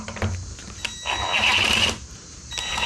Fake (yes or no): yes